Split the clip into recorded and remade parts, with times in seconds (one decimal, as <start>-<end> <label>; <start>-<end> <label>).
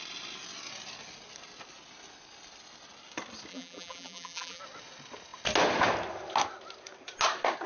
0.0-3.5 recorded; 3.5-4.6 remade; 4.6-7.7 recorded